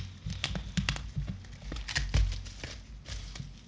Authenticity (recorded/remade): recorded